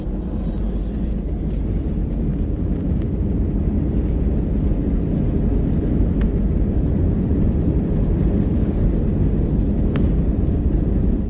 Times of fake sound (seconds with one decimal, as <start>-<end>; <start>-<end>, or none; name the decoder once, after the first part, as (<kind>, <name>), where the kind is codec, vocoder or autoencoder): none